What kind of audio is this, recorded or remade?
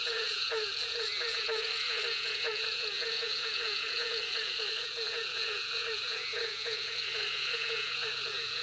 remade